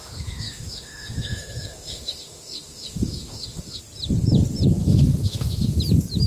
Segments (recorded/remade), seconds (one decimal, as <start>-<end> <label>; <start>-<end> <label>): 0.0-3.8 remade; 3.8-4.8 recorded; 4.8-5.8 remade; 5.8-6.3 recorded